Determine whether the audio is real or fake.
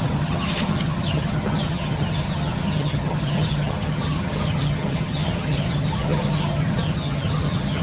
fake